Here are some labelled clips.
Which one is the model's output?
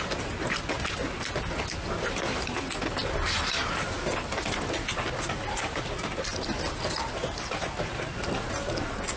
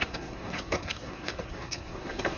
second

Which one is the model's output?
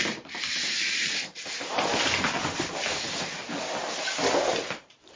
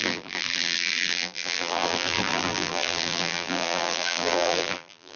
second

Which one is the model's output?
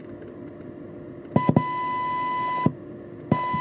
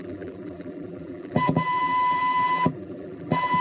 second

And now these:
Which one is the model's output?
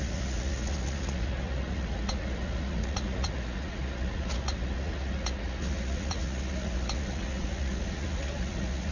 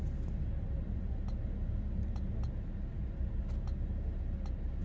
first